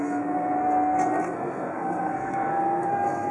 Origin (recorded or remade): remade